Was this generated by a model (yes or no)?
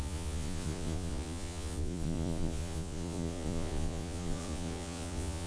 yes